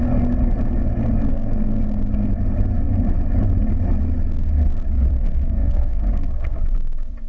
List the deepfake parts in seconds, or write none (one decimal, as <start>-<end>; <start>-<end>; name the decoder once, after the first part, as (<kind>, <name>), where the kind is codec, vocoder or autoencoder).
1.3-1.8 (codec, SNAC); 5.1-6.6